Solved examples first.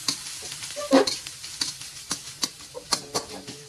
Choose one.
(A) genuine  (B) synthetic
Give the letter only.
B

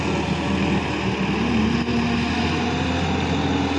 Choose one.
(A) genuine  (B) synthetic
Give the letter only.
A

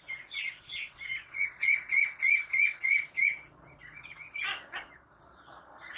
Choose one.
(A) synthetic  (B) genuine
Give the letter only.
A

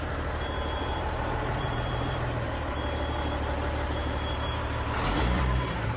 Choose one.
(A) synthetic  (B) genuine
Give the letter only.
A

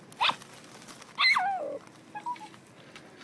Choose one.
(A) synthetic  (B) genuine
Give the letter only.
B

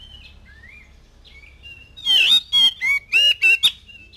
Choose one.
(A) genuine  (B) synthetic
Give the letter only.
A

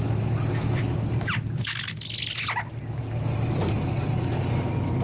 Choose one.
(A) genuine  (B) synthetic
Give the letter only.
A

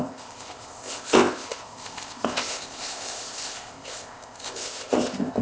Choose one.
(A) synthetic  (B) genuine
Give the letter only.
A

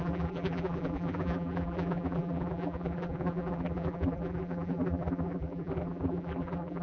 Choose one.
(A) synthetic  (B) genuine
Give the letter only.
A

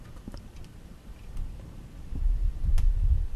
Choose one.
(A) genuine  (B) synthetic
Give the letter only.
B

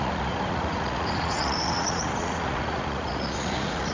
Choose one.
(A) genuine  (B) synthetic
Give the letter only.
B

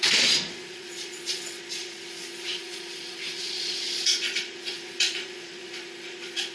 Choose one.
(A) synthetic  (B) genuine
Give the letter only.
A